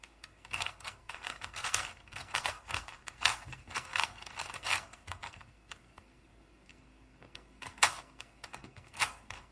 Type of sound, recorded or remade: remade